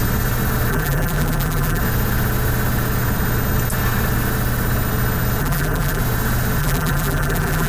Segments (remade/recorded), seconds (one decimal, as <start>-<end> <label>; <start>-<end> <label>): 0.0-0.7 recorded; 0.7-1.8 remade; 1.8-5.4 recorded; 5.4-6.0 remade; 6.0-6.6 recorded; 6.6-7.7 remade